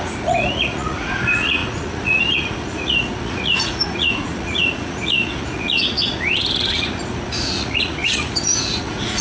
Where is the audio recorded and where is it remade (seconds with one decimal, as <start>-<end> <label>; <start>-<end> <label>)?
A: 0.0-9.2 remade